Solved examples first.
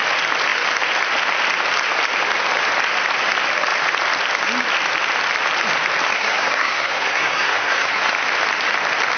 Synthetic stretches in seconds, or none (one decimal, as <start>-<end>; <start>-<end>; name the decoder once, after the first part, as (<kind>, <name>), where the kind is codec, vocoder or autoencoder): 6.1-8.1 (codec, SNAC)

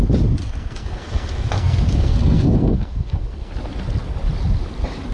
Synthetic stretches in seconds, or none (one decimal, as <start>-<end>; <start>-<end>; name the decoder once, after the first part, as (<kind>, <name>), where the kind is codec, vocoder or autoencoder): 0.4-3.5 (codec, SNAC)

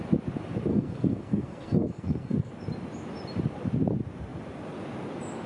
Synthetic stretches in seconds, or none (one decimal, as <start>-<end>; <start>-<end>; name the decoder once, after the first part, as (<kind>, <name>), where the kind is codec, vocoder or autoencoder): 0.7-2.5 (codec, SNAC)

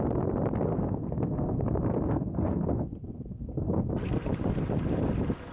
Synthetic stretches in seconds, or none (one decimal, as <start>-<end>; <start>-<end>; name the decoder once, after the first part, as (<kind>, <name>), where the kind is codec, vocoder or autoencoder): 0.7-3.9 (codec, SNAC)

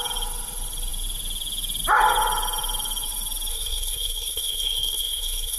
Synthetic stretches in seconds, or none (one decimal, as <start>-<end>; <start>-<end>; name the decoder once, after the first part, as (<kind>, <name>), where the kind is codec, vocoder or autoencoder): 3.5-5.6 (codec, SNAC)

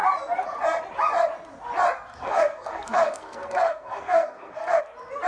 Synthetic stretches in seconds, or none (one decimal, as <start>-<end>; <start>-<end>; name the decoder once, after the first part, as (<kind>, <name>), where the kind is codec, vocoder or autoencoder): 2.1-4.8 (codec, SNAC)

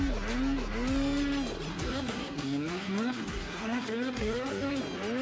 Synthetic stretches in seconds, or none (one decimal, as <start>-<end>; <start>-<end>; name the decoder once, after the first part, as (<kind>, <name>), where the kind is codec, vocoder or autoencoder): 1.7-4.8 (codec, SNAC)